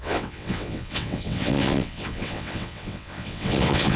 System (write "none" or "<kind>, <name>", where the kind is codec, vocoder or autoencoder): vocoder, WaveNeXt